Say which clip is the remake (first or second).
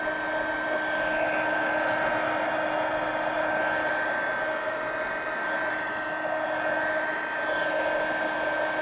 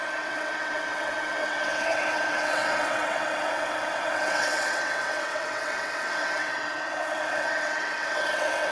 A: second